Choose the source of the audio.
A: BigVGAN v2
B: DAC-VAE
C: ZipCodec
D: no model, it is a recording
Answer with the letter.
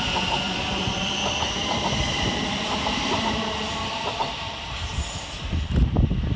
A